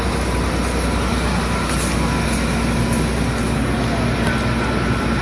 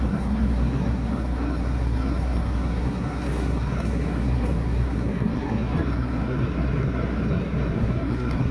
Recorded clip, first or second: first